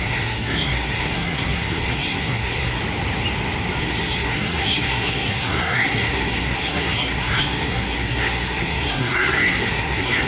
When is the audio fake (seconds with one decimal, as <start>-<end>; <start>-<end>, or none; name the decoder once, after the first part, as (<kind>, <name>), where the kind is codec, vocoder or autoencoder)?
0.0-2.8 (codec, SNAC); 3.8-10.3